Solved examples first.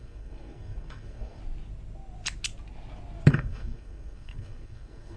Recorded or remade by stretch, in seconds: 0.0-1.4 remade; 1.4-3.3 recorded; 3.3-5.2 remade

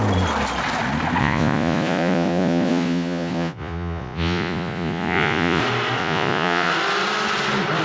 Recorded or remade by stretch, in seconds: 0.0-1.2 recorded; 1.2-5.6 remade; 5.6-6.0 recorded; 6.0-6.7 remade; 6.7-7.8 recorded

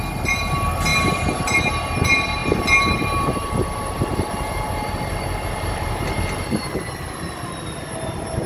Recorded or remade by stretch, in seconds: 0.0-0.9 recorded; 0.9-1.7 remade; 1.7-2.4 recorded; 2.4-6.6 remade; 6.6-8.5 recorded

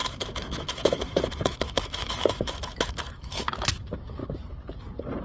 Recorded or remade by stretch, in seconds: 0.0-4.2 remade; 4.2-5.2 recorded